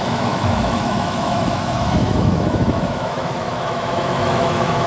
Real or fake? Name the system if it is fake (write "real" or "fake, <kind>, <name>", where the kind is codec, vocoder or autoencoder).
fake, autoencoder, DAC-VAE